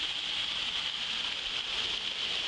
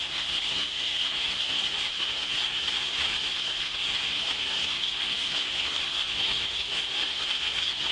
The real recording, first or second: first